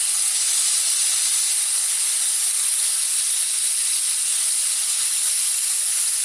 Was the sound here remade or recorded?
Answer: recorded